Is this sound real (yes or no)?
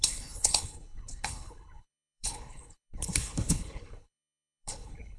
no